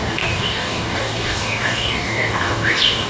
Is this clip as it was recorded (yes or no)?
no